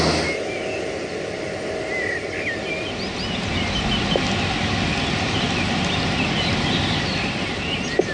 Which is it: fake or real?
real